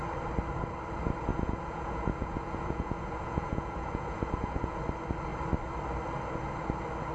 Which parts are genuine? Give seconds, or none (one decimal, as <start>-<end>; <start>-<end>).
0.0-1.3; 4.8-7.1